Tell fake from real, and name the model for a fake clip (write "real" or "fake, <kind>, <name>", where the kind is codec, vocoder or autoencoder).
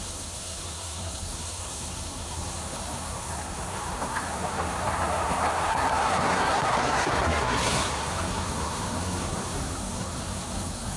fake, codec, SNAC